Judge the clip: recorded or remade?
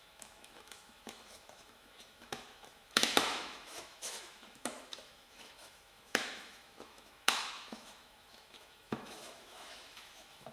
remade